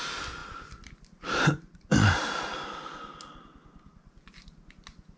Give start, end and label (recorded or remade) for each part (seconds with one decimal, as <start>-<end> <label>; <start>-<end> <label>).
0.0-5.2 recorded